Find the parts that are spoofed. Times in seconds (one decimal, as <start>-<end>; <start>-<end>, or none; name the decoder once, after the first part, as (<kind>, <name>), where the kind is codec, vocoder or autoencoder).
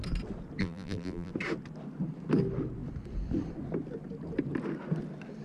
0.6-1.3 (vocoder, BigVGAN v2)